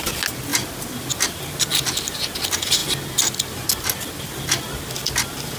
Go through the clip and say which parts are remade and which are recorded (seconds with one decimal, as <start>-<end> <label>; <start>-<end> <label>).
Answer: 0.0-5.6 recorded